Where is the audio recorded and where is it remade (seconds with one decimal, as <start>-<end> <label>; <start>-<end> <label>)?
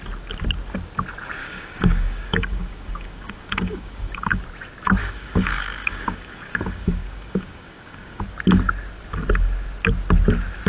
0.0-1.4 recorded; 1.4-4.4 remade; 4.4-5.0 recorded; 5.0-8.2 remade; 8.2-10.7 recorded